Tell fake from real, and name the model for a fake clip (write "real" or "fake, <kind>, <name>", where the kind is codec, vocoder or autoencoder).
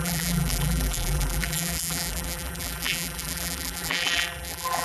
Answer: fake, vocoder, BigVGAN v2